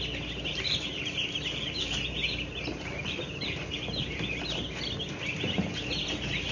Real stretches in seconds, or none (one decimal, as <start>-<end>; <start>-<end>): 0.0-0.5; 4.4-6.5